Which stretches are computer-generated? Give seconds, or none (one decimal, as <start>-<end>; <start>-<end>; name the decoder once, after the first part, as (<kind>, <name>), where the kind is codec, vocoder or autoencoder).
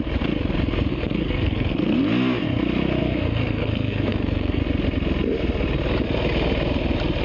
0.9-2.0 (codec, SNAC); 3.0-4.6